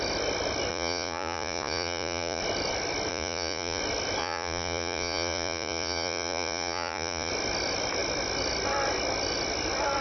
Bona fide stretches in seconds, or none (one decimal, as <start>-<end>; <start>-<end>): 0.0-0.7; 2.4-3.1; 3.8-4.2; 7.3-10.0